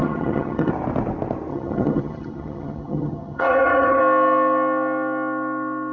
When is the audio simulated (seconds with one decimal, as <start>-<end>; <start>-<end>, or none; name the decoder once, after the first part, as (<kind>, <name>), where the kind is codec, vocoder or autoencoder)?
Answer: 0.0-0.7 (vocoder, HiFi-GAN); 1.5-4.0

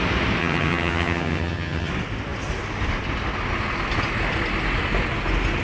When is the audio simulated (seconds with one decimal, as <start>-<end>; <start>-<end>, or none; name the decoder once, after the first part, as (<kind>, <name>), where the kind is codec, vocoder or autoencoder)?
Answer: 0.4-1.9 (vocoder, HiFi-GAN)